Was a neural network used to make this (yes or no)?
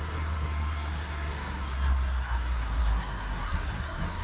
yes